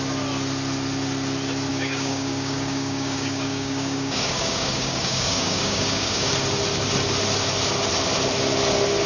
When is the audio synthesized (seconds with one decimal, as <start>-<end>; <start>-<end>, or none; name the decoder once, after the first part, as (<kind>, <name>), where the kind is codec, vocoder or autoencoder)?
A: 1.7-6.3 (codec, DAC)

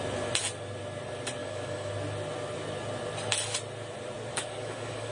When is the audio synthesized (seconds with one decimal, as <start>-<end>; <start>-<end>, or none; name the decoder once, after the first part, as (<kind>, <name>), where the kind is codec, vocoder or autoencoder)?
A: 1.4-1.9 (codec, DAC); 4.3-5.1

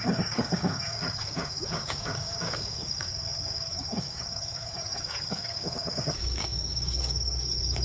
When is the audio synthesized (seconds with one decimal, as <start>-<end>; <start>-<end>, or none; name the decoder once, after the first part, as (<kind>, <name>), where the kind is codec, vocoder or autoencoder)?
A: 0.0-7.8 (codec, DAC)

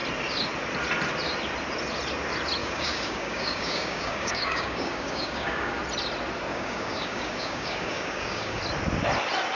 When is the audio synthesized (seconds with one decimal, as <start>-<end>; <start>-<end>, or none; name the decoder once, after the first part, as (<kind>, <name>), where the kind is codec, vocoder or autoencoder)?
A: 2.6-5.8 (codec, DAC); 6.5-8.6

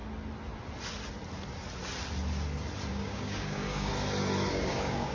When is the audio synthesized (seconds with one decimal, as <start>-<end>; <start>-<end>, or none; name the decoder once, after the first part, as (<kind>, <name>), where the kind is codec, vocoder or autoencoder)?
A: 2.9-3.9 (codec, DAC); 4.5-5.1

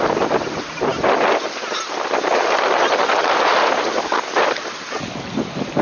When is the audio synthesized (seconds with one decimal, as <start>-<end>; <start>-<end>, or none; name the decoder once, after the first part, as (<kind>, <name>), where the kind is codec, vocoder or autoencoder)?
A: none

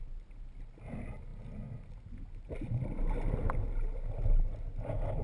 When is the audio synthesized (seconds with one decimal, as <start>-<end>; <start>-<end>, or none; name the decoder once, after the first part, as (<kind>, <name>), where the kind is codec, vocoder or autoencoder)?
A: none